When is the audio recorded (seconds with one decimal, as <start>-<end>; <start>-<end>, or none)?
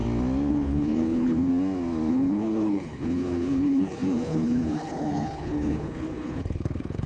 0.0-0.5; 1.5-2.1